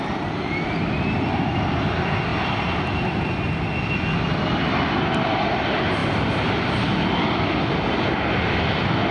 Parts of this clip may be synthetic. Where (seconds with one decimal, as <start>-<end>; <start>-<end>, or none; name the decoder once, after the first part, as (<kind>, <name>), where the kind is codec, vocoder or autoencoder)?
none